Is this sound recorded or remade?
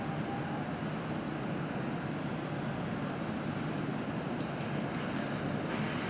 recorded